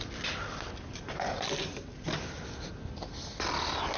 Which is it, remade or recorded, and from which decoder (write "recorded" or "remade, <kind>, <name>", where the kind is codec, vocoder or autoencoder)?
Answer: recorded